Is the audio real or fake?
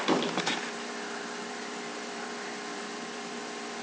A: fake